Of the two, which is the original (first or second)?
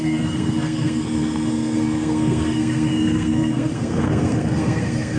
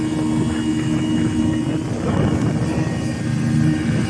second